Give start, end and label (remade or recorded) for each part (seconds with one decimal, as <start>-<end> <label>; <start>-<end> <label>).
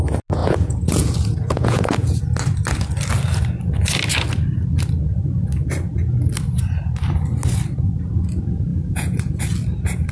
0.0-0.4 recorded; 0.4-2.2 remade; 2.2-8.7 recorded; 8.7-9.4 remade; 9.4-10.1 recorded